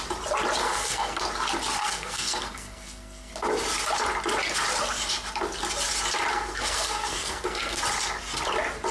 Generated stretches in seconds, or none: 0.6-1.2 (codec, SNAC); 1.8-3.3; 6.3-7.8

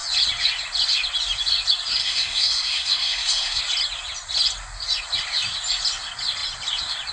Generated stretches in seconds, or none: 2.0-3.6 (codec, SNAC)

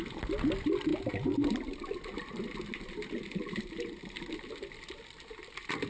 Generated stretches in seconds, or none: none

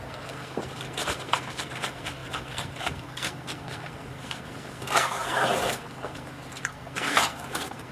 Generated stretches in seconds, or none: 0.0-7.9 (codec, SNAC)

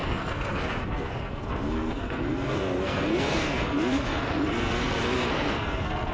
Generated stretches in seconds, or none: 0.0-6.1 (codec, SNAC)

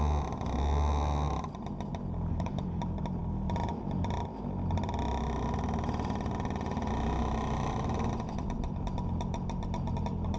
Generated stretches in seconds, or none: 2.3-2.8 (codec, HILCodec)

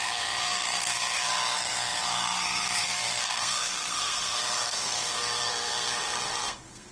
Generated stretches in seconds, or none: 0.0-6.9 (codec, SNAC)

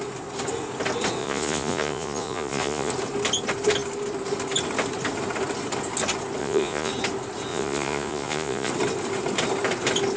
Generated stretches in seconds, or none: 1.2-2.9 (vocoder, Vocos); 6.4-6.9; 7.5-8.7